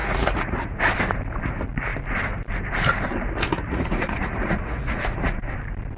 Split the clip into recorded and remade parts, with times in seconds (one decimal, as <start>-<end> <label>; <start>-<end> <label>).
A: 0.0-0.8 remade; 0.8-3.5 recorded; 3.5-5.5 remade; 5.5-6.0 recorded